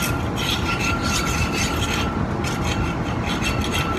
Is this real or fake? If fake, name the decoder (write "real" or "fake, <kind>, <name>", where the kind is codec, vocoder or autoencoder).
real